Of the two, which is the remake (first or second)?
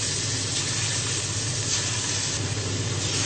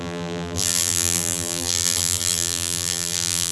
second